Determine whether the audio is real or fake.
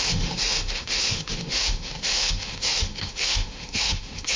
fake